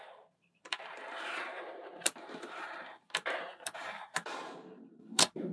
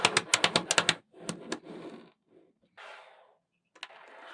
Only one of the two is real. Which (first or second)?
second